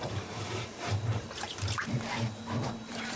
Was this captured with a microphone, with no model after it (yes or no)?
no